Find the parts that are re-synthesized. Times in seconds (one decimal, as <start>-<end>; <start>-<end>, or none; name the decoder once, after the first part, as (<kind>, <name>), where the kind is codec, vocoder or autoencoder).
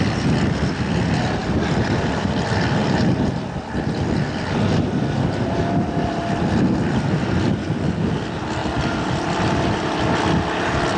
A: 2.8-3.8 (vocoder, BigVGAN v2); 8.6-10.2